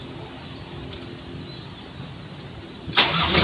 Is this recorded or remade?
recorded